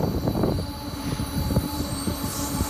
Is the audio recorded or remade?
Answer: remade